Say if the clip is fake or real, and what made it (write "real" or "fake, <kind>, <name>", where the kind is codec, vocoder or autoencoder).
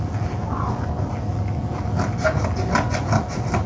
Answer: real